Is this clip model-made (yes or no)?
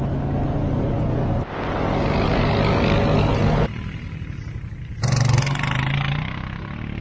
no